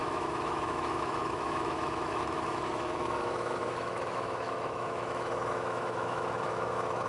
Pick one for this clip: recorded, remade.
remade